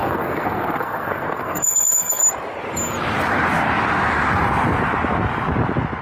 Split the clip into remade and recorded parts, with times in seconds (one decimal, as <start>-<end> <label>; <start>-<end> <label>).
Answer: 0.0-2.2 remade; 2.2-6.0 recorded